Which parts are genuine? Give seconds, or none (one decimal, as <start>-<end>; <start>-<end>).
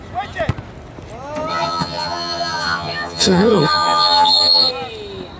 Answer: 0.0-1.5; 4.7-5.4